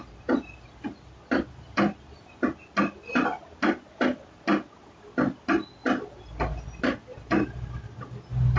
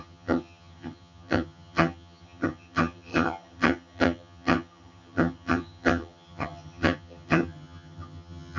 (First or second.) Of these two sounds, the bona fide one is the first